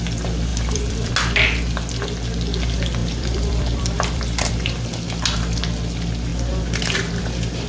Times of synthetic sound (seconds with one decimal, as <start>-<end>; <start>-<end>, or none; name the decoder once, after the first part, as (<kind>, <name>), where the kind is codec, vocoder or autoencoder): 0.5-1.1 (vocoder, BigVGAN v2); 3.0-4.5